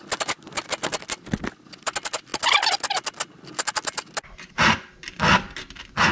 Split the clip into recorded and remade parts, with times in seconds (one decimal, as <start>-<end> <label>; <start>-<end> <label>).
0.0-6.1 recorded